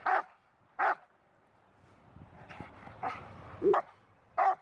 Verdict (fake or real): fake